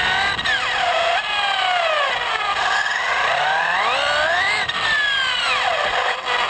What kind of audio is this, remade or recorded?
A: recorded